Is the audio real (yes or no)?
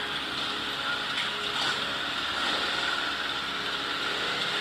yes